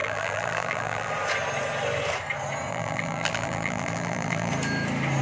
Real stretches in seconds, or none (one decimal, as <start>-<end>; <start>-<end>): 1.1-2.7; 4.5-5.2